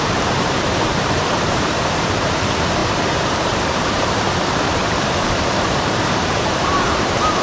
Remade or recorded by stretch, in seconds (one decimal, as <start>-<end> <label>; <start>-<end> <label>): 0.0-7.4 remade